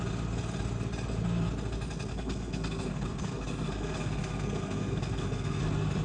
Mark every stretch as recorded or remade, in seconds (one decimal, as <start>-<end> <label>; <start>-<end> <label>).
0.0-2.1 recorded; 2.1-5.6 remade; 5.6-6.0 recorded